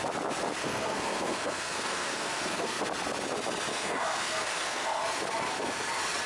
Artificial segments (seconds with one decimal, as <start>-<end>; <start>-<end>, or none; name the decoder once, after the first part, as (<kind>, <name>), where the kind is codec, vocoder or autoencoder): 0.6-2.8 (codec, SNAC); 3.7-5.0